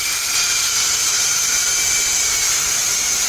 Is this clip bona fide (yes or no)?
no